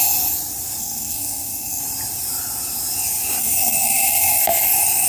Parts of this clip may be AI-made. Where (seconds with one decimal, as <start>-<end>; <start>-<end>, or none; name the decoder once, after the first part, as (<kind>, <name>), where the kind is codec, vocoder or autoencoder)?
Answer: 0.8-1.8 (codec, SNAC); 3.4-4.4